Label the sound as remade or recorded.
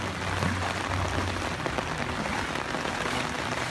recorded